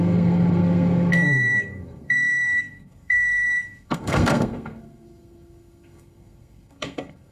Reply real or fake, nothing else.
fake